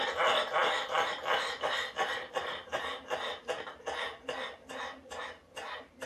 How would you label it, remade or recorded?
recorded